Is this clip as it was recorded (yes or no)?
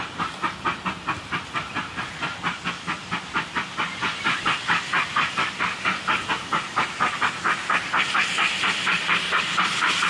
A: yes